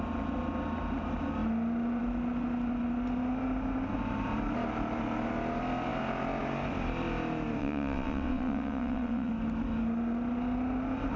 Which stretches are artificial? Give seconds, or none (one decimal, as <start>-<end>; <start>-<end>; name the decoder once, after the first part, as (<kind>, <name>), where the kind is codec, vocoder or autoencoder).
7.6-9.3 (vocoder, WaveNeXt)